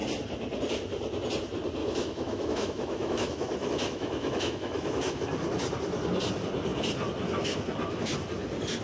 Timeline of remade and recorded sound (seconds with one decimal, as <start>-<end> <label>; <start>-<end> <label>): 0.0-1.8 recorded; 1.8-5.2 remade; 5.2-8.8 recorded